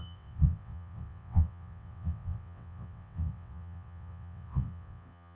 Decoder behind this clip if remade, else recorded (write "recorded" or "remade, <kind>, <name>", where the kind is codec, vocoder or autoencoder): remade, vocoder, WaveNeXt